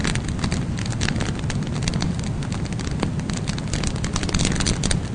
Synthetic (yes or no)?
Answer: no